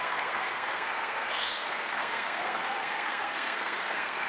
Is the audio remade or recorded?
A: remade